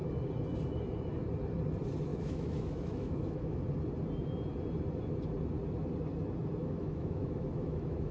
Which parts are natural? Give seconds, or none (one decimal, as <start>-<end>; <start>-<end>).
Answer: 0.0-2.1; 3.6-6.6